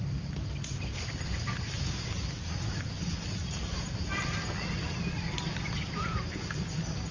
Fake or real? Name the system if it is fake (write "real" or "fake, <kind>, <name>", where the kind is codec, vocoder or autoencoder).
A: real